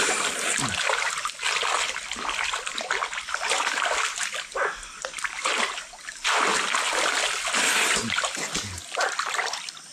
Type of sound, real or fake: real